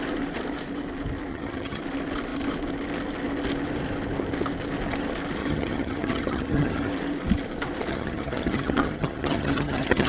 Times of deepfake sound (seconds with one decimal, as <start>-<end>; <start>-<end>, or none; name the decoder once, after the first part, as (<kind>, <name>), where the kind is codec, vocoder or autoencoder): 1.3-1.8 (vocoder, HiFi-GAN); 5.4-6.9; 7.9-10.1